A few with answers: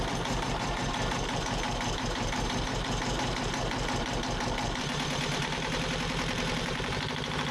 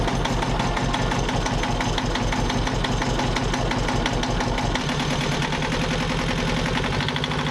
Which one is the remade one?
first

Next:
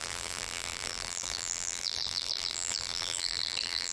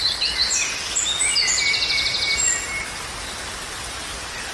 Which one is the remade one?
first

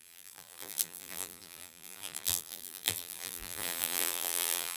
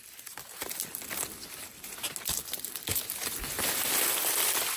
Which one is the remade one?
first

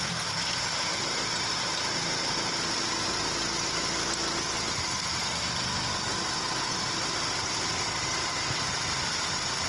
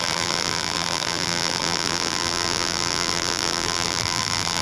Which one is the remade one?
second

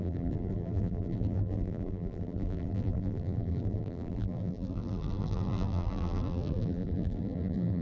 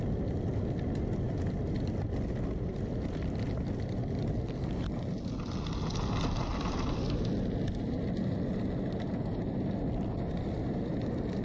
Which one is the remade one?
first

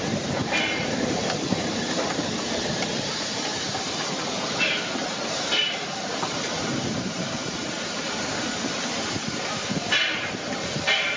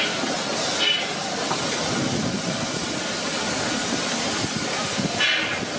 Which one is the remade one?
first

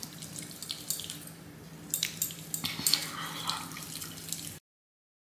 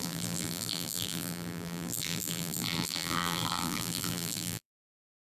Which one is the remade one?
second